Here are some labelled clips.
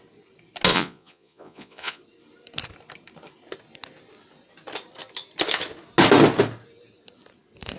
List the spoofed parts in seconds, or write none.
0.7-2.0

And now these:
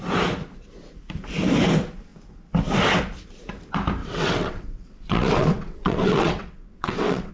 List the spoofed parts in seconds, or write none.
4.0-7.3

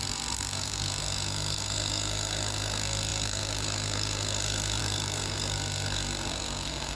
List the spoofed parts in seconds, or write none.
0.0-6.9

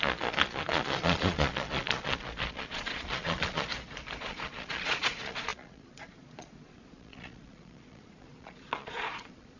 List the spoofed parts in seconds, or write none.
0.0-3.7; 4.2-9.6

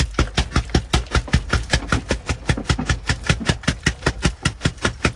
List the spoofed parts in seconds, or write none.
none

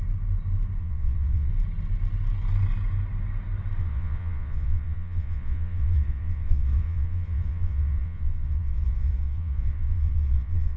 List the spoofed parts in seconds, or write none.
0.8-1.5; 3.8-10.8